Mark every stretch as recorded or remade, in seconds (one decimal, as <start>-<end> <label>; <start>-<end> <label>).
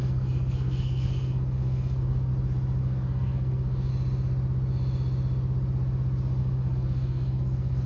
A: 0.0-2.3 remade; 2.3-2.8 recorded; 2.8-3.9 remade; 3.9-6.4 recorded; 6.4-7.9 remade